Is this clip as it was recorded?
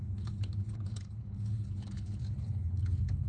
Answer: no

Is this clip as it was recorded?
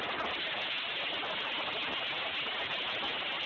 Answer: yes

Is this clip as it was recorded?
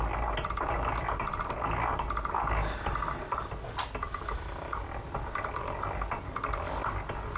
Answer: yes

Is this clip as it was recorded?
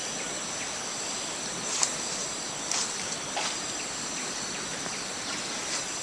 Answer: yes